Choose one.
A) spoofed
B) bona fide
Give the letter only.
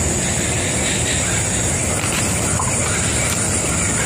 B